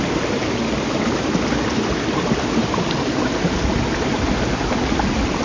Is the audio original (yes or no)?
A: yes